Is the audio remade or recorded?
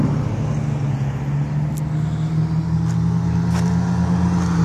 recorded